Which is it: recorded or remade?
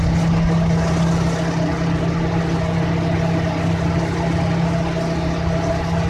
recorded